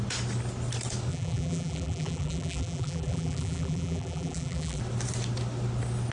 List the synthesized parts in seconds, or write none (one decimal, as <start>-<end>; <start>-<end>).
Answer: 1.1-4.8